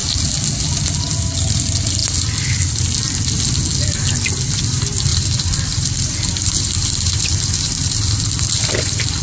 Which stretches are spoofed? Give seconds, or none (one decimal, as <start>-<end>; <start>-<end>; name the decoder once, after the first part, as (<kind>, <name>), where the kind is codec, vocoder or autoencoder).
5.1-9.2 (vocoder, BigVGAN v2)